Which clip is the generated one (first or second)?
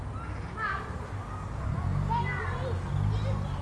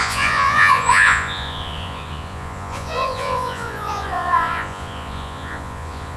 second